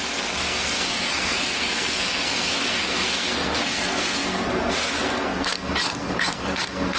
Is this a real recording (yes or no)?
no